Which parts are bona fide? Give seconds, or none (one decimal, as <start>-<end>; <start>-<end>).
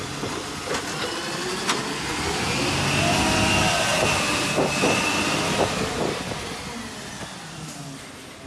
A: 0.0-8.5